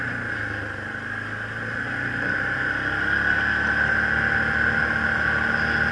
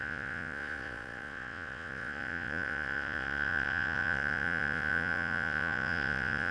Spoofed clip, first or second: second